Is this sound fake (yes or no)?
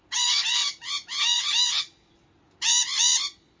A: no